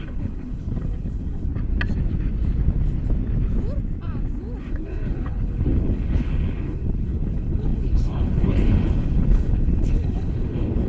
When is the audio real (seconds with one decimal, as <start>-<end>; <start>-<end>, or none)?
1.5-4.6